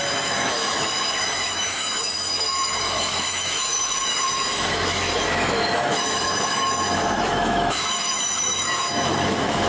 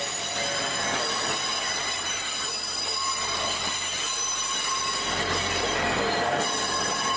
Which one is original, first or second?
second